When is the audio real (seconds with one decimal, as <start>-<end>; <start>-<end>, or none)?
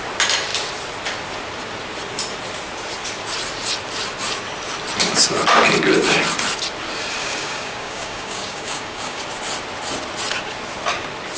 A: 0.0-7.2; 9.2-11.4